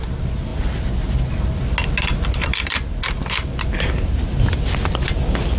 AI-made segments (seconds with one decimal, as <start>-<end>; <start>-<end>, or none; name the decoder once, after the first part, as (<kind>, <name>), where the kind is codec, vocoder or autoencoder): none